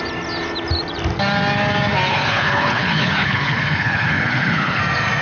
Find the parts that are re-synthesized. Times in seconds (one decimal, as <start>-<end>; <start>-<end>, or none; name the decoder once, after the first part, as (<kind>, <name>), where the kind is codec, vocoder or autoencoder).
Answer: 2.1-4.8 (codec, HILCodec)